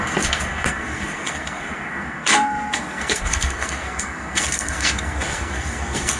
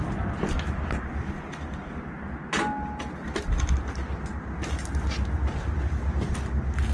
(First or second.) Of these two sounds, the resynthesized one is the first